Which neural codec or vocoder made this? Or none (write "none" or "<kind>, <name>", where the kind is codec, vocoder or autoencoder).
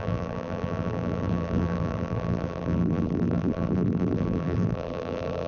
vocoder, BigVGAN v2